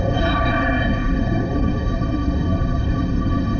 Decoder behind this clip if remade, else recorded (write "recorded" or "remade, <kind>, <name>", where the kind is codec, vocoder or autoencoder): remade, codec, SNAC